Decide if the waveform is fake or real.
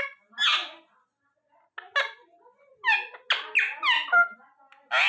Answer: real